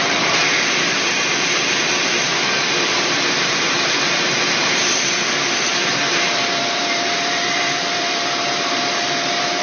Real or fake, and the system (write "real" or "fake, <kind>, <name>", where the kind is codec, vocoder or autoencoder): fake, vocoder, BigVGAN v2